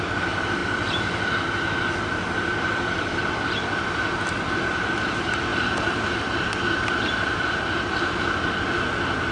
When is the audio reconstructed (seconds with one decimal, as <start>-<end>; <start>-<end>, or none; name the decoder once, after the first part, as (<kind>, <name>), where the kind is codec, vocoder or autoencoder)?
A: none